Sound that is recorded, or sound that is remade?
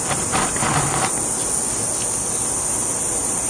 recorded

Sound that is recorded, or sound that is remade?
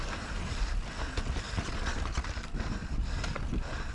recorded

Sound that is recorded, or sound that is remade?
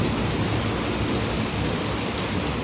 recorded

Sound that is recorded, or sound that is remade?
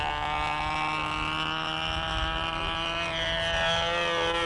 recorded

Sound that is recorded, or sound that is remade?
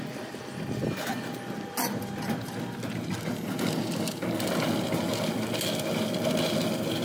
recorded